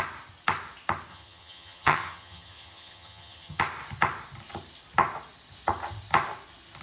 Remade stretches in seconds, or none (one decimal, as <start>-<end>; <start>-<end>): 1.1-3.6